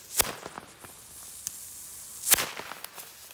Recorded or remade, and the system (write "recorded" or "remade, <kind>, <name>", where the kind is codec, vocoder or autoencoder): recorded